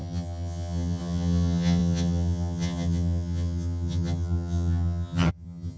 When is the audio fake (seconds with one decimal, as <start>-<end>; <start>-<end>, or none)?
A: 0.0-5.8